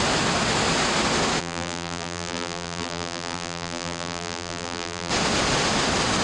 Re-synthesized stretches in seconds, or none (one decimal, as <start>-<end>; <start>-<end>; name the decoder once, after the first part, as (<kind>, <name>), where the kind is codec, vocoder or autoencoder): 1.4-5.1 (vocoder, BigVGAN v2)